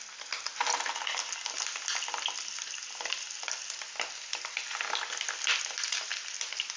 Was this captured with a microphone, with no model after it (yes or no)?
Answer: yes